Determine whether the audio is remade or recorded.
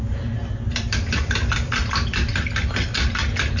recorded